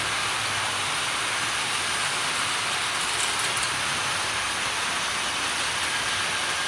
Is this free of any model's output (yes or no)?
yes